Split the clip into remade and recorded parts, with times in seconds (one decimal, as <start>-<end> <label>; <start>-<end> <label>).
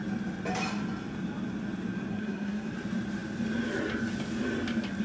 0.0-2.1 recorded; 2.1-2.7 remade; 2.7-5.0 recorded